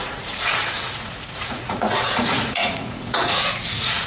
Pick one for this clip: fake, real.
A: fake